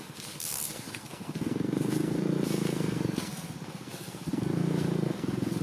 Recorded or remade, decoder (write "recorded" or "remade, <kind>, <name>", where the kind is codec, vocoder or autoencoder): remade, codec, SNAC